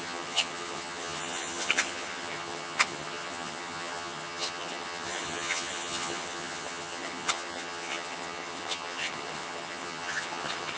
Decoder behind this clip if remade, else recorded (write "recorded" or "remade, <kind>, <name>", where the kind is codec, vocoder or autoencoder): remade, vocoder, HiFi-GAN